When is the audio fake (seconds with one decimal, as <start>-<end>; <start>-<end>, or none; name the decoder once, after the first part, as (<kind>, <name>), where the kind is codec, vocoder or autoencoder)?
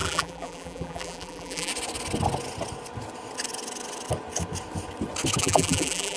0.0-1.7 (vocoder, BigVGAN v2); 5.4-6.2